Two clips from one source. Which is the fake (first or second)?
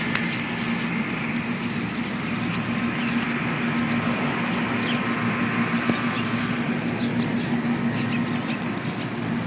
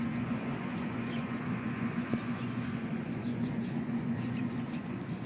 second